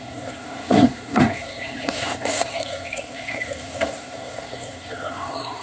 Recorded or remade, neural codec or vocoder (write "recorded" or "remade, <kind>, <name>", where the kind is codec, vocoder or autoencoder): remade, codec, SNAC